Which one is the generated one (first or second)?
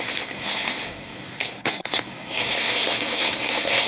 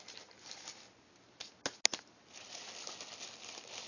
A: first